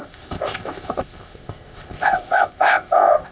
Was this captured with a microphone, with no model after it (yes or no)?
no